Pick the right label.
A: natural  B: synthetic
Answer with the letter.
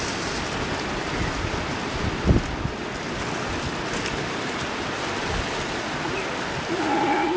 A